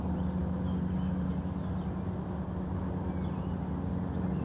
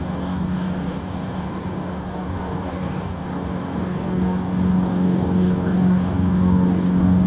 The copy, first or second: second